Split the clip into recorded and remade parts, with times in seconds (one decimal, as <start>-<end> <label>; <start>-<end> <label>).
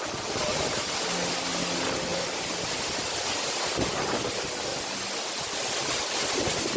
0.0-6.8 recorded